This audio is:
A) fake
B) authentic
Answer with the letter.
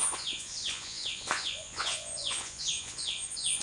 A